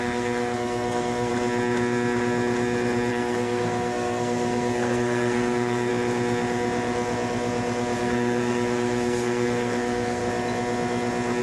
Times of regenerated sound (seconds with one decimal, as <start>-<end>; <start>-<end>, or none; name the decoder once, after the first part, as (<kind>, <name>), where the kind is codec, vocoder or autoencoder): 0.0-1.3 (codec, SNAC); 3.1-5.9; 8.0-10.2